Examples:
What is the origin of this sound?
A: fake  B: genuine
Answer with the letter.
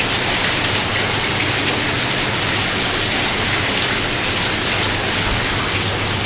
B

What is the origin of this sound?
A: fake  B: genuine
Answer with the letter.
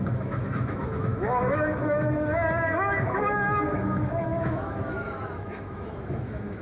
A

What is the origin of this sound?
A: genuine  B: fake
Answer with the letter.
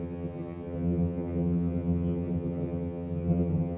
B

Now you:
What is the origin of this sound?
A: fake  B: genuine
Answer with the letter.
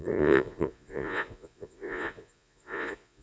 A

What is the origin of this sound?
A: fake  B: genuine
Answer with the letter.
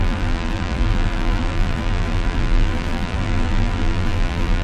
A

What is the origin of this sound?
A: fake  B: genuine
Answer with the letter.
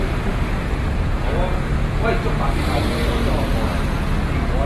B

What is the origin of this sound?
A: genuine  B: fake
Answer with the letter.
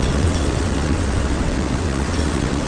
B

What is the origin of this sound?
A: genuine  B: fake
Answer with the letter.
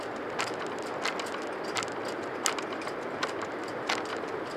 A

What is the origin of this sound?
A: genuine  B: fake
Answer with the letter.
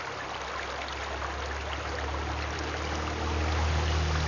A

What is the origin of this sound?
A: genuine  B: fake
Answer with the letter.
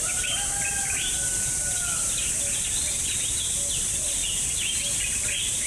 A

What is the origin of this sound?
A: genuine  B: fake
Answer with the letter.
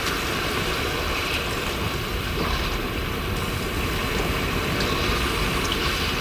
A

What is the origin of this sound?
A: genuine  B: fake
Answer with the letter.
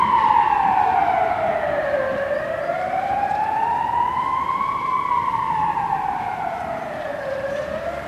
B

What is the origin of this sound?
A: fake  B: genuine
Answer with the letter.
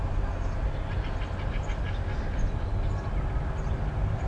B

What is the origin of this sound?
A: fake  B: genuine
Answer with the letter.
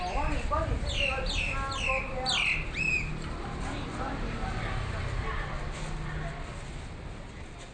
B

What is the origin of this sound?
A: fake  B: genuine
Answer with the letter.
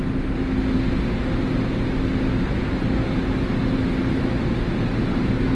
B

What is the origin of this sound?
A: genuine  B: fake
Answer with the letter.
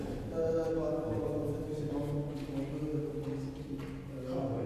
A